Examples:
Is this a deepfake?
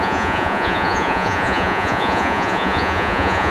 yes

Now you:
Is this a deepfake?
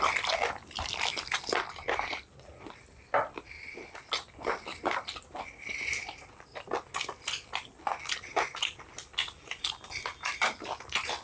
no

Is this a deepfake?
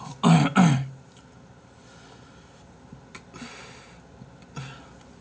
no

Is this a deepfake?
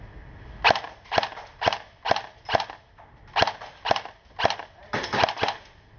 no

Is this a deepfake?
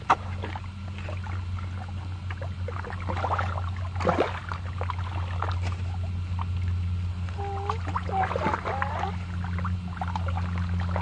no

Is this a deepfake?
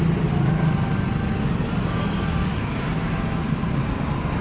no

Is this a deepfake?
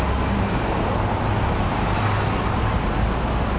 no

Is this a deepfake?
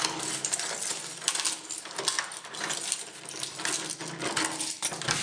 no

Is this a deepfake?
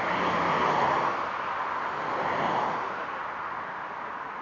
no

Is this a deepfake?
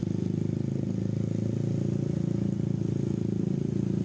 no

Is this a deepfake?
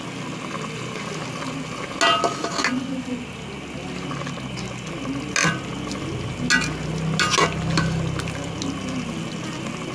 no